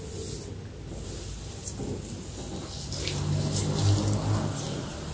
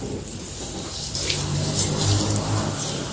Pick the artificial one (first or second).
second